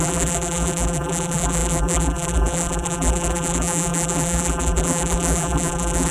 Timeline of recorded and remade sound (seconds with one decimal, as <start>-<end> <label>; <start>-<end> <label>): 0.0-6.1 remade